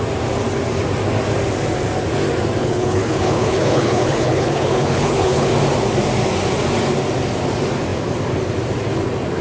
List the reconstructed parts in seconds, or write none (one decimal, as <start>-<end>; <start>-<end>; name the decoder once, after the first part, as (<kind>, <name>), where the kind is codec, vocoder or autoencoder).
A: 2.6-5.5 (codec, HILCodec)